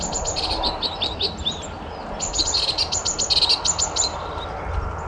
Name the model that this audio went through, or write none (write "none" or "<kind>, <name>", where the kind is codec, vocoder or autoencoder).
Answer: none